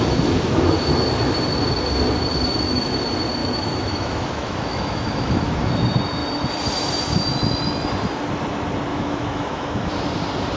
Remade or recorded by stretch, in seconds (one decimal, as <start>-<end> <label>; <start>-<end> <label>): 0.0-2.5 recorded; 2.5-3.0 remade; 3.0-3.4 recorded; 3.4-5.7 remade; 5.7-8.9 recorded; 8.9-9.9 remade; 9.9-10.6 recorded